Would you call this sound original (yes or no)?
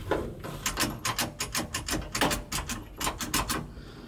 yes